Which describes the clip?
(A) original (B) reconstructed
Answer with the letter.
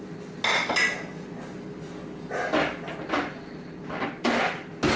A